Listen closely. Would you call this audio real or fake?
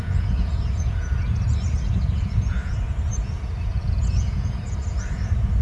fake